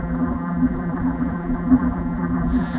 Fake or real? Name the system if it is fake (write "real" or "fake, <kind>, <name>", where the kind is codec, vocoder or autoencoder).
fake, vocoder, BigVGAN v2